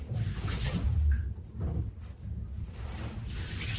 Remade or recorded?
recorded